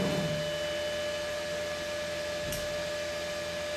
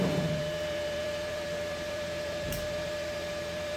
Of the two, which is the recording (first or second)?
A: first